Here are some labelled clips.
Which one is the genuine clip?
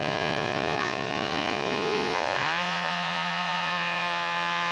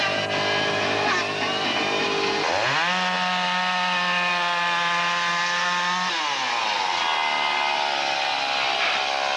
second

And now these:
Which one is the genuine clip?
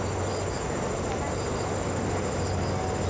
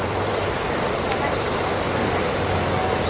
first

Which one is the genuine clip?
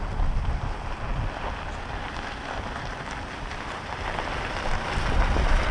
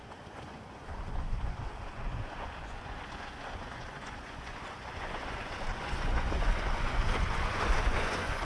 first